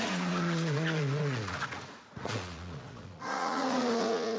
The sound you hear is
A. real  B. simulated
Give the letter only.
B